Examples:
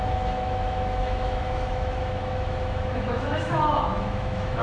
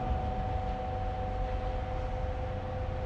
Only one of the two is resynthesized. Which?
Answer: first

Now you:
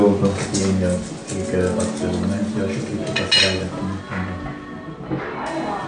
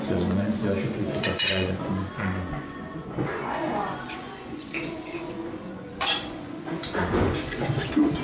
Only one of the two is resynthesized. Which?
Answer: second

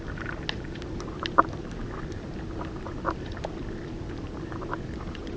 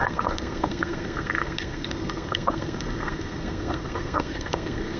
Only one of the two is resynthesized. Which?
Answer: second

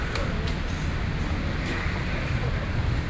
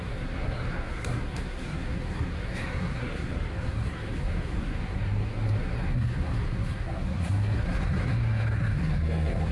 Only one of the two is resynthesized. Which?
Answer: second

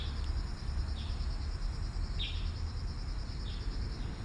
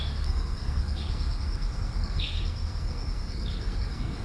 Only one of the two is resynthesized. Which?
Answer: second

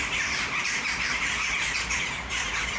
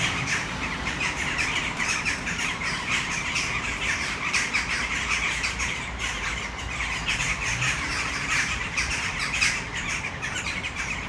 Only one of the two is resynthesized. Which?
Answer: second